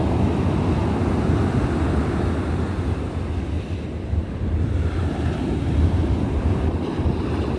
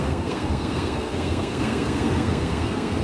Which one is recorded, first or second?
first